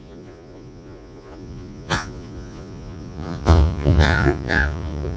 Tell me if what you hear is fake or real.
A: fake